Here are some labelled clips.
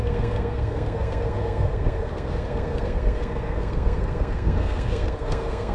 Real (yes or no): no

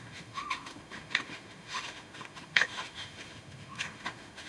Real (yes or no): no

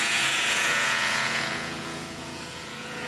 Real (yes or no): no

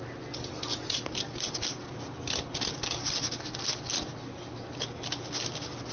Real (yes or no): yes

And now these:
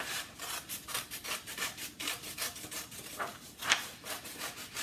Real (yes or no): no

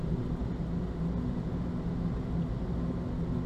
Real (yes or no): yes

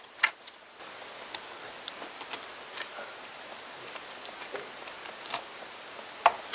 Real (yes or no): yes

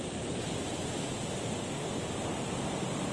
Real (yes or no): yes